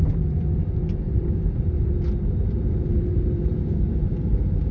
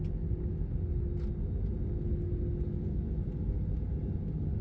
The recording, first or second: second